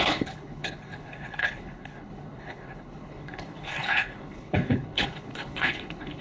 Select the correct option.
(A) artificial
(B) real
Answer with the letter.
A